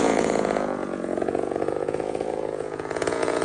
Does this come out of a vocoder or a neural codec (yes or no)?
yes